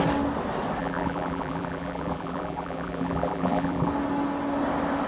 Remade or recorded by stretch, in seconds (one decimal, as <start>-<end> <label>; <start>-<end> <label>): 0.0-0.8 recorded; 0.8-3.9 remade; 3.9-5.1 recorded